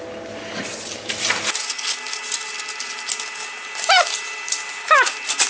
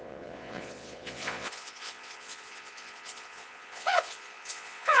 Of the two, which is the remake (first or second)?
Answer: second